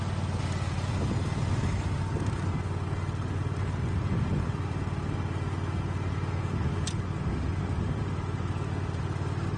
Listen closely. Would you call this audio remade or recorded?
recorded